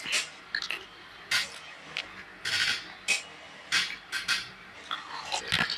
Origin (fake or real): real